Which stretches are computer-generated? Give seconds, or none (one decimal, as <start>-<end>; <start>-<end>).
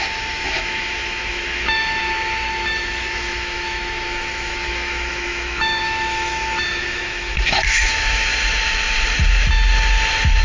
0.0-8.3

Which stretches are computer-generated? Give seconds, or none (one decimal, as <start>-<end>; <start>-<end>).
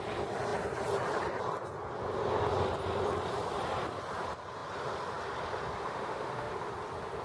5.9-6.5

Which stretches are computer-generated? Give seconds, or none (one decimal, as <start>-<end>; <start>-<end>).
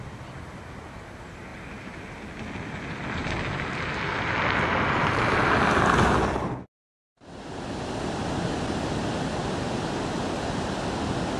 none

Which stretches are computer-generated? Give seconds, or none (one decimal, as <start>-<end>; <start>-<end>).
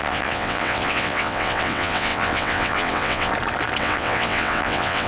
0.0-3.3; 3.8-5.1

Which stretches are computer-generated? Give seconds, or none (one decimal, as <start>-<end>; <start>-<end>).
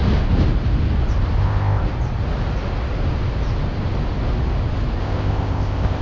1.4-1.8; 5.0-6.0